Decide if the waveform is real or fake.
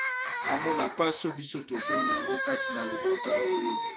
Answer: fake